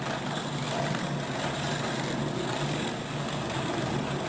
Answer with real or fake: real